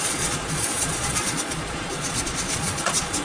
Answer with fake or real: fake